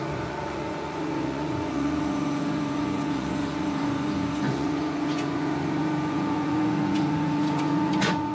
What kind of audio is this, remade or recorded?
remade